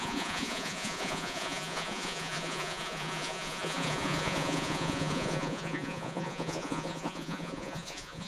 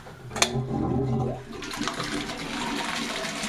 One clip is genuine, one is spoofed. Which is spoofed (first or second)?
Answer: first